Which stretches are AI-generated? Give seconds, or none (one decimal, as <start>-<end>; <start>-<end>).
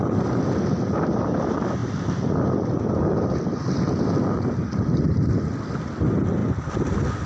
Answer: none